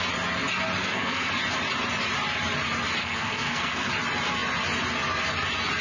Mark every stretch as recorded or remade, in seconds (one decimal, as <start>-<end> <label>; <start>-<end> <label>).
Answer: 0.0-0.8 recorded; 0.8-1.3 remade; 1.3-3.0 recorded; 3.0-3.9 remade; 3.9-5.8 recorded